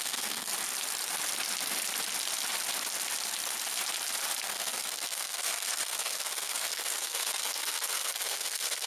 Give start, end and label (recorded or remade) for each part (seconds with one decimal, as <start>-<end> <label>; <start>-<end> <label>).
0.0-0.5 remade; 0.5-4.4 recorded; 4.4-8.9 remade